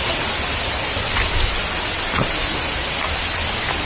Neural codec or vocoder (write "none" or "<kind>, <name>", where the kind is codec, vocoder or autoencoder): none